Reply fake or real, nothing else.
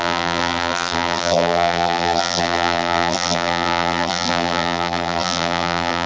fake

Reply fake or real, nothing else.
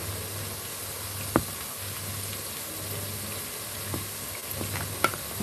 real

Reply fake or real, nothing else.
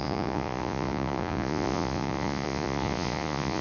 fake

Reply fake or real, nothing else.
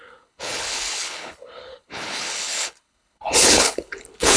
fake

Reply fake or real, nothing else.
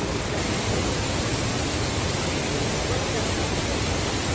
real